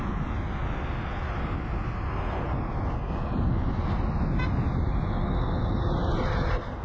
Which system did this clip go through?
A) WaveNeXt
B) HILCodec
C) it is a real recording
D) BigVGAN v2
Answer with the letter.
C